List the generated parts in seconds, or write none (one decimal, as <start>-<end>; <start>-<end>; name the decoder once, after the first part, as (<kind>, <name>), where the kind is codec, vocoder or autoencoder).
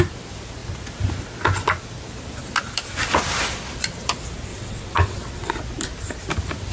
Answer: 4.5-5.5 (vocoder, WaveNeXt)